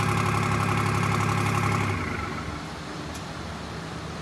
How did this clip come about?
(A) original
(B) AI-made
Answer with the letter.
A